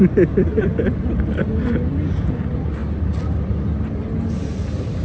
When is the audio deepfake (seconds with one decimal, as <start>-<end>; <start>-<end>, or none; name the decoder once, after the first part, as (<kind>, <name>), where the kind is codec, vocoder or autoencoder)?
none